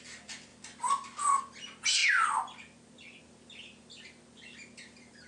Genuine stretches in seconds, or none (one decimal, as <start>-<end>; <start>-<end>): 0.0-5.3